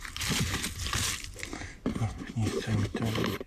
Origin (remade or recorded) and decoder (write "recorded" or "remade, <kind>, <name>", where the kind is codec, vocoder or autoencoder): recorded